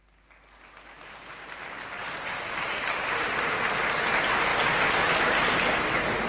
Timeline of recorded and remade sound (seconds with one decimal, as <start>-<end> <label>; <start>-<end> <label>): 0.0-2.0 recorded; 2.0-3.7 remade; 3.7-6.3 recorded